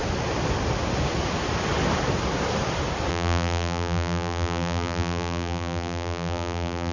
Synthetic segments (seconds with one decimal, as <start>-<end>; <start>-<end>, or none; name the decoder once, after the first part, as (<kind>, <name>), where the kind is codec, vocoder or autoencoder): 3.1-6.9 (vocoder, BigVGAN v2)